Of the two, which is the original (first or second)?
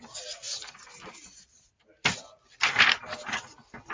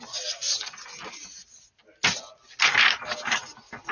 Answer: second